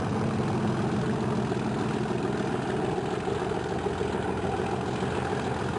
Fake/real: real